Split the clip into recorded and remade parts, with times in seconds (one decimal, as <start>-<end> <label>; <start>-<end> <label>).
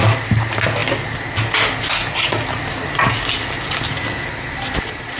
0.0-5.2 recorded